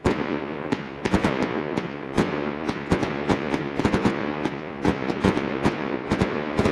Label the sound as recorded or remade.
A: remade